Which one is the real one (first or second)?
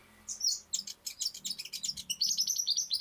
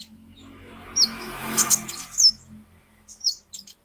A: first